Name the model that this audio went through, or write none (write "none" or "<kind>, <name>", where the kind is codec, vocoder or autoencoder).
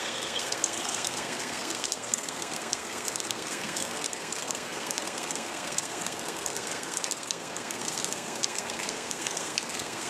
codec, SNAC